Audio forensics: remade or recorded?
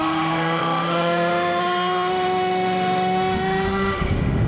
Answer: remade